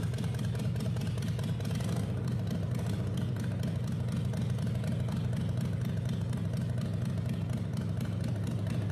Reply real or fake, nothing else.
real